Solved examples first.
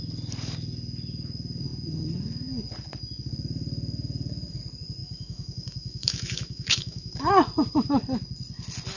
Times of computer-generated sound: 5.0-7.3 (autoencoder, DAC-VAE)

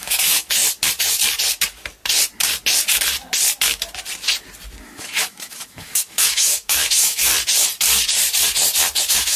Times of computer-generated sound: 0.0-0.6 (autoencoder, DAC-VAE); 4.8-7.3; 9.0-9.4